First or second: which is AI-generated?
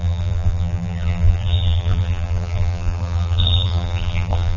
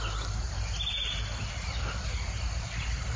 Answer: first